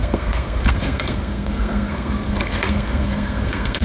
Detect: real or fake fake